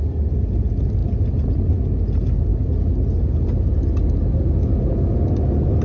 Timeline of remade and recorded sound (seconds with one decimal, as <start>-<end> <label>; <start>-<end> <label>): 0.0-5.8 recorded